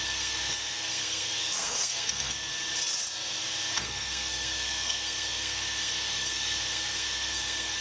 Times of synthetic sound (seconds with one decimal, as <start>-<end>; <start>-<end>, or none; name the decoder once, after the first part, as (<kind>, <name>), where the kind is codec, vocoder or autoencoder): 0.0-2.5 (codec, SNAC); 3.7-7.8